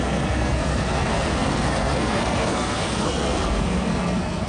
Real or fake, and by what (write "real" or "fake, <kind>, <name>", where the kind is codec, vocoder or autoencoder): fake, codec, SNAC